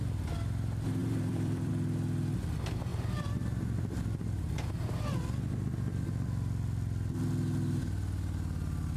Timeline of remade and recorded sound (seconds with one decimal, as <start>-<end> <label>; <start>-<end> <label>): 0.0-1.0 recorded; 1.0-1.7 remade; 1.7-2.9 recorded; 2.9-4.7 remade; 4.7-9.0 recorded